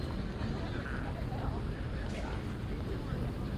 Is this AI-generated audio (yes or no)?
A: no